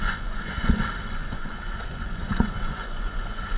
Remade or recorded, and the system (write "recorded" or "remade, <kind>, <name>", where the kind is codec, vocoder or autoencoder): remade, vocoder, Vocos